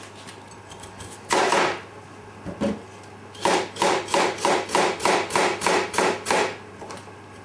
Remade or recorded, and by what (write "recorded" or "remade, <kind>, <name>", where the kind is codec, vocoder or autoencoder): recorded